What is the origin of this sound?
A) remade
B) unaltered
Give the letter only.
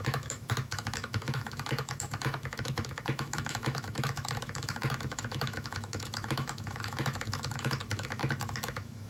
A